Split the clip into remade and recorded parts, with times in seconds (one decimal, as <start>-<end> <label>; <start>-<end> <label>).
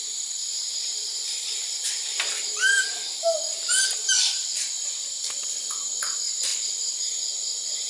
0.0-0.9 recorded; 0.9-5.6 remade; 5.6-6.5 recorded; 6.5-7.0 remade; 7.0-7.9 recorded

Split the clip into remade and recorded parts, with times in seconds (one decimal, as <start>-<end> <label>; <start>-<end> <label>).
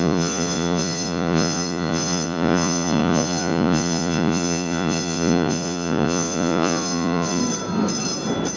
0.0-7.4 remade; 7.4-8.6 recorded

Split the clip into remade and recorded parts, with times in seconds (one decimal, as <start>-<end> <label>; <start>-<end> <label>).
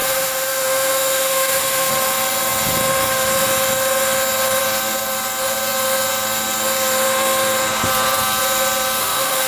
0.0-1.9 remade; 1.9-9.0 recorded; 9.0-9.5 remade